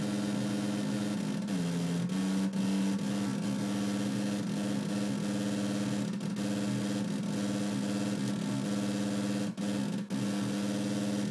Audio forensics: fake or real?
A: real